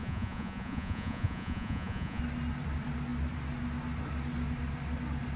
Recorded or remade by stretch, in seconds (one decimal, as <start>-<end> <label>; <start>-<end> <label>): 0.0-2.2 remade; 2.2-5.4 recorded